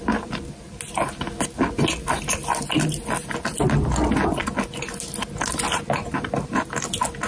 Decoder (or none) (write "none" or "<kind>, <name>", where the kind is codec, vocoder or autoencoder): none